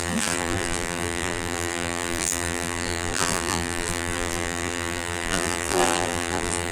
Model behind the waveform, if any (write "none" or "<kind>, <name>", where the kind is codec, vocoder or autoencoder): vocoder, BigVGAN v2